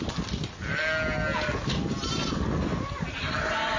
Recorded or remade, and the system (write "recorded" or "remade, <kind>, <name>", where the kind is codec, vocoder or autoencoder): recorded